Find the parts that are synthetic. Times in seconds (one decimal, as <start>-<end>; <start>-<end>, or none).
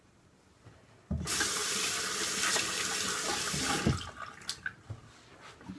none